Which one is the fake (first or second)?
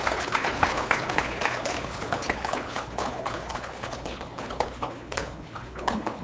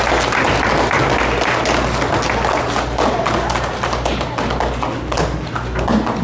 first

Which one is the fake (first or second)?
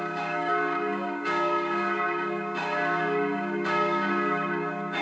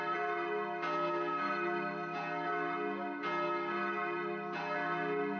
first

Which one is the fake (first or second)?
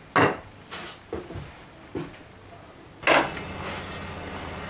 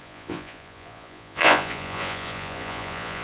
second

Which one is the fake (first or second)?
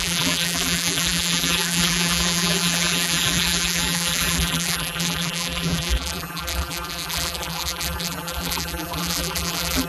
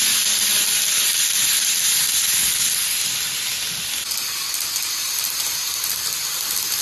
first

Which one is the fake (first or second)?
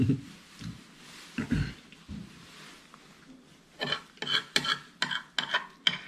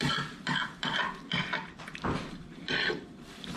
second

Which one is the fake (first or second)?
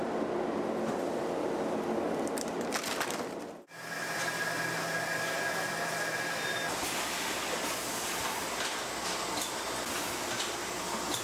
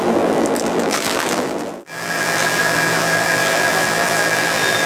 second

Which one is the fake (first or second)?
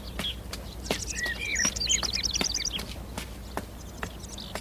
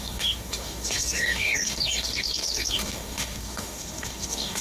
second